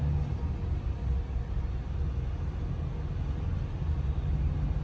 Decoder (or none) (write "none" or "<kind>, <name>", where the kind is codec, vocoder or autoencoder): none